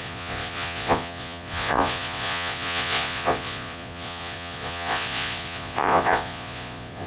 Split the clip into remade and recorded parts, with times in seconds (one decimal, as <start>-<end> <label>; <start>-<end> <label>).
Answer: 0.0-7.1 remade